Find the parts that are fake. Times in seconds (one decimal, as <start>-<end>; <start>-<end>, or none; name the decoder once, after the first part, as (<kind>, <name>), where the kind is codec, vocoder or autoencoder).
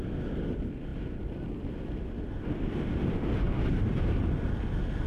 none